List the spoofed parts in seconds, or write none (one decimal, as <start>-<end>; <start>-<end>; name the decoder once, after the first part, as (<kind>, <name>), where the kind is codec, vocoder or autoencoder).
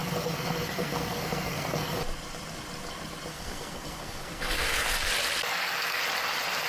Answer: 0.0-2.0 (codec, SNAC); 3.3-5.1; 5.5-6.0